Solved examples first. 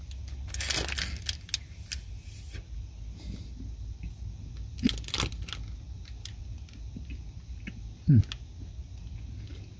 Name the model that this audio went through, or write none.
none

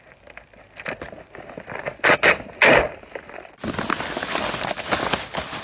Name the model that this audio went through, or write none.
none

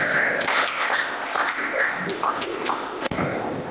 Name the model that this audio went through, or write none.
codec, ZipCodec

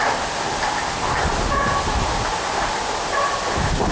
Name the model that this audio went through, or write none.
none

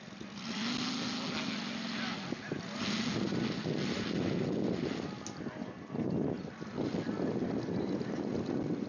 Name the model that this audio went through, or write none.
none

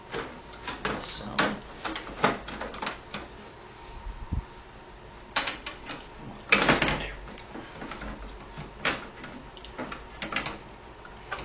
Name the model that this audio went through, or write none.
none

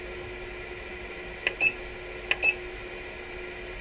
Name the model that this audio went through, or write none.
none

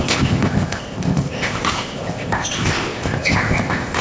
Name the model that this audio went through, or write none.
codec, ZipCodec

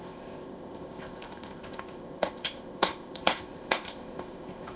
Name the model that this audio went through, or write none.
codec, ZipCodec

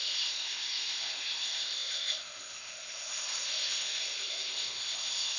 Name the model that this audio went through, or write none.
codec, ZipCodec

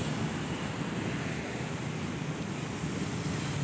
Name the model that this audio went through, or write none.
none